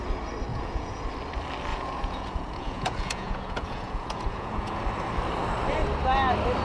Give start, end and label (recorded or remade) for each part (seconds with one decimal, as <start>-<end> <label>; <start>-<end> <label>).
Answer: 0.0-0.5 recorded; 0.5-1.0 remade; 1.0-1.7 recorded; 1.7-4.8 remade; 4.8-6.6 recorded